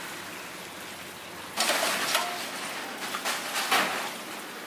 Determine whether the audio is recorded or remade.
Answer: recorded